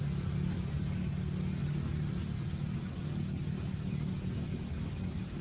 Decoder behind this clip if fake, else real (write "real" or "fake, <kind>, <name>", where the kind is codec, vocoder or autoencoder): real